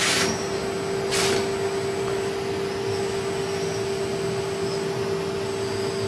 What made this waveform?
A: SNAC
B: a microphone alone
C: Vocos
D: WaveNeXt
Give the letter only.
B